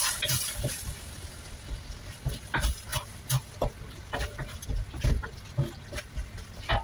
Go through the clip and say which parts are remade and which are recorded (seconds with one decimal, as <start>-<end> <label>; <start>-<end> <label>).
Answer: 0.0-6.8 recorded